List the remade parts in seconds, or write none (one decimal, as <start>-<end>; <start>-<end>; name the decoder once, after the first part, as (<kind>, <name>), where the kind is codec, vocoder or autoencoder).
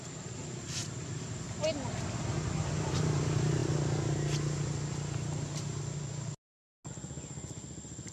none